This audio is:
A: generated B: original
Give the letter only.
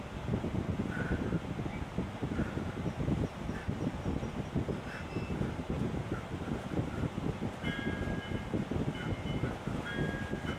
B